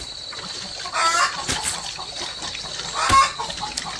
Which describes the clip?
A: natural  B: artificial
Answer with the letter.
A